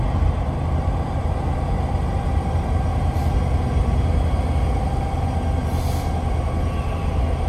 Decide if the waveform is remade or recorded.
recorded